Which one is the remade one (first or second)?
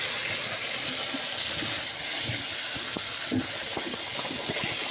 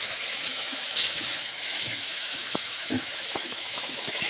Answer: second